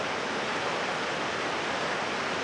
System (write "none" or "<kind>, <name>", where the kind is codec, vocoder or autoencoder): none